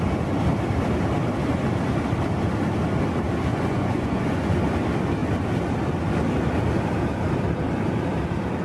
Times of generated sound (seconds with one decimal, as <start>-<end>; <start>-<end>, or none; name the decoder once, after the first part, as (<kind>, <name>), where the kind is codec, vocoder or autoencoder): 3.5-4.6 (vocoder, Vocos)